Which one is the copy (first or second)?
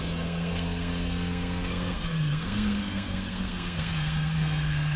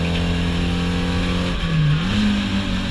first